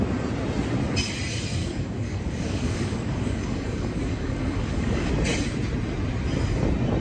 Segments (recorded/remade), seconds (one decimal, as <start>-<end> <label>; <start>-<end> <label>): 0.0-1.6 recorded; 1.6-5.1 remade; 5.1-7.0 recorded